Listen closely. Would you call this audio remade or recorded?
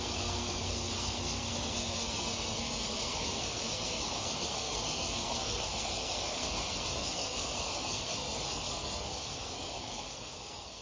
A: remade